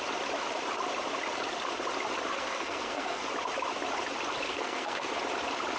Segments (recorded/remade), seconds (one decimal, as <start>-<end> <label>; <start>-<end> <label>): 0.0-2.3 recorded; 2.3-3.2 remade; 3.2-4.5 recorded; 4.5-5.1 remade; 5.1-5.8 recorded